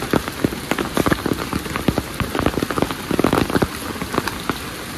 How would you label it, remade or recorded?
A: recorded